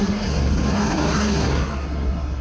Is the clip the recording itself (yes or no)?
no